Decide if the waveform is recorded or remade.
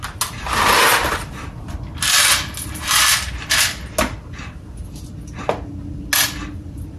recorded